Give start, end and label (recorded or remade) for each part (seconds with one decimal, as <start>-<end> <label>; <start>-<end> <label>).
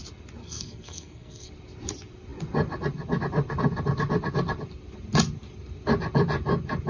0.0-0.4 recorded; 0.4-1.5 remade; 1.5-6.9 recorded